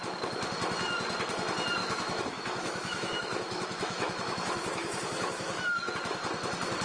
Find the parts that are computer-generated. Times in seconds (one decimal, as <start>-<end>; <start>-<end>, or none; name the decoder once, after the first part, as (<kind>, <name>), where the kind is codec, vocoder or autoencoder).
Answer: 1.8-5.9 (autoencoder, DAC-VAE)